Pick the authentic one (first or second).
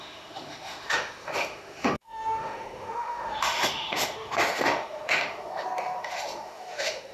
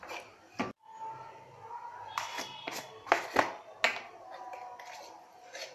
second